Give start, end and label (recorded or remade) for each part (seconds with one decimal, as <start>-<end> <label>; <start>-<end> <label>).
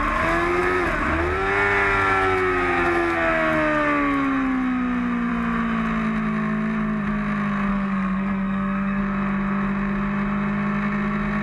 0.0-7.7 recorded; 7.7-9.0 remade; 9.0-11.4 recorded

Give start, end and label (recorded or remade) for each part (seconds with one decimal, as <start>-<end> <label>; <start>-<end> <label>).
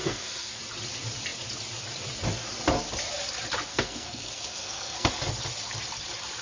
0.0-0.6 remade; 0.6-3.7 recorded; 3.7-5.1 remade; 5.1-6.4 recorded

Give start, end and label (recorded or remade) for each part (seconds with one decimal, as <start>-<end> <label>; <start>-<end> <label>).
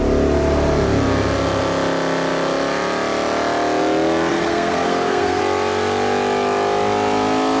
0.0-4.3 recorded; 4.3-5.4 remade; 5.4-7.6 recorded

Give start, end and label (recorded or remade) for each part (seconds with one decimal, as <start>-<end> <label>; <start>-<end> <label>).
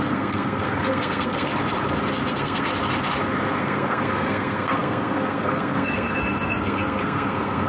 0.0-1.5 remade; 1.5-2.3 recorded; 2.3-2.7 remade; 2.7-3.6 recorded; 3.6-7.7 remade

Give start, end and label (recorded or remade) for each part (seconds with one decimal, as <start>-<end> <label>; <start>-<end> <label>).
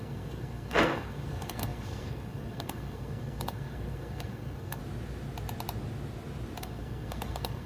0.0-4.8 remade; 4.8-6.6 recorded; 6.6-7.7 remade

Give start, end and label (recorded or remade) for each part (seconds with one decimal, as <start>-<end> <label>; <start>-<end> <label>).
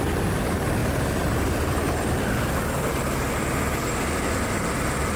0.0-5.2 recorded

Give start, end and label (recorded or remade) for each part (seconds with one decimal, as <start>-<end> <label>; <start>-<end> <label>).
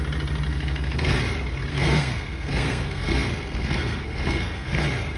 0.0-0.5 recorded; 0.5-1.2 remade; 1.2-1.7 recorded; 1.7-4.8 remade; 4.8-5.2 recorded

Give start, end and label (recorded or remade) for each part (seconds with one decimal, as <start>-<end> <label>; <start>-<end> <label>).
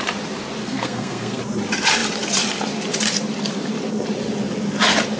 0.0-0.6 recorded; 0.6-1.4 remade; 1.4-5.2 recorded